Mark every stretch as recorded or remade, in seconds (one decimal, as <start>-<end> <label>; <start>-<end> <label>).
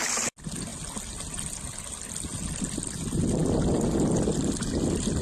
0.0-5.2 recorded